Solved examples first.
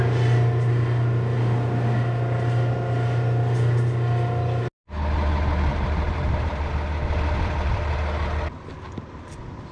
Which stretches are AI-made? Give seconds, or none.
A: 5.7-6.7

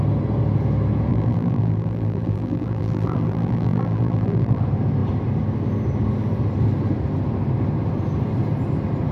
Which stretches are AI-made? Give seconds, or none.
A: 1.1-4.6

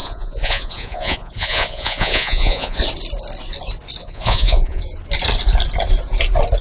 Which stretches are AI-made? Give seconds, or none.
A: 0.0-2.8; 4.0-4.8

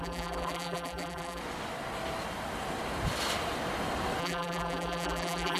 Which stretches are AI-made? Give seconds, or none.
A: 0.0-1.4; 4.2-5.6

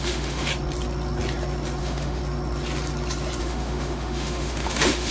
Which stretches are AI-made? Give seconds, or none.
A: 0.0-0.5; 1.8-2.2; 3.4-5.1

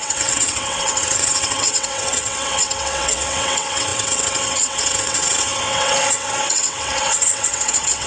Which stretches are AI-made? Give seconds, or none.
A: 0.0-8.1

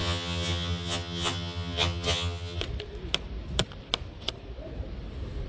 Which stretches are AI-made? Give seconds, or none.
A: 0.0-2.6

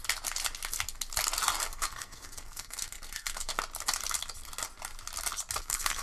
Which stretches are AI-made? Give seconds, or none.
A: 1.7-3.5; 5.6-6.0